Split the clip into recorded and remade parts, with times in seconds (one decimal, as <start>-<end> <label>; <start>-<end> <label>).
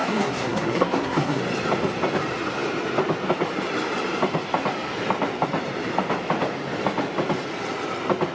0.0-1.4 remade; 1.4-8.3 recorded